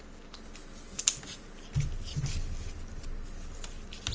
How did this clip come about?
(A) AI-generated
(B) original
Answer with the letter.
B